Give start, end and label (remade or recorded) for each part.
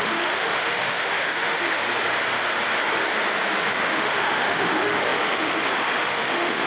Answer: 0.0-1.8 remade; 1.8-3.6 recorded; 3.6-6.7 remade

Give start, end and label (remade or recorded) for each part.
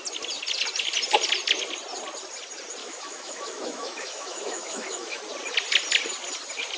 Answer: 0.0-2.8 recorded; 2.8-5.2 remade; 5.2-6.8 recorded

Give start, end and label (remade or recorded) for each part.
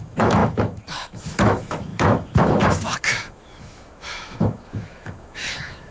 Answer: 0.0-5.9 remade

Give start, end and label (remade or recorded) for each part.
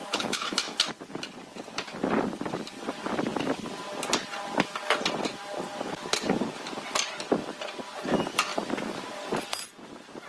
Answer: 0.0-0.9 remade; 0.9-10.3 recorded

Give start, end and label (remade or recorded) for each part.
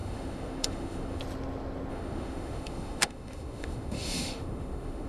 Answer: 0.0-1.2 remade; 1.2-1.9 recorded; 1.9-5.1 remade